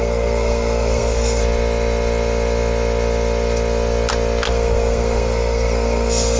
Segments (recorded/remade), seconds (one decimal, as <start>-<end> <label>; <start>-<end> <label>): 0.0-1.4 remade; 1.4-4.5 recorded; 4.5-6.4 remade